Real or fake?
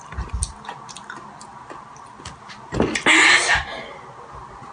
real